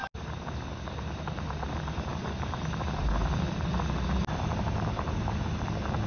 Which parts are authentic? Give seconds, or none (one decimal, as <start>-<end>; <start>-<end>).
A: 0.0-6.1